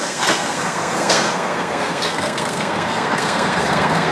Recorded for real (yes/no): no